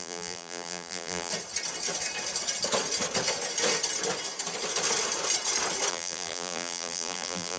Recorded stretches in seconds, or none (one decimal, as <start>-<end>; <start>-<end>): 1.3-5.9